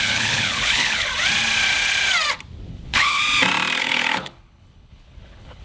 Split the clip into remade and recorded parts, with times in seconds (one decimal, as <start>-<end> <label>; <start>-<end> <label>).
0.0-1.1 remade; 1.1-2.7 recorded; 2.7-3.2 remade; 3.2-3.8 recorded; 3.8-5.6 remade